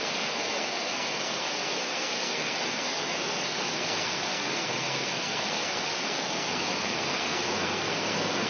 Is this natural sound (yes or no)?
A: no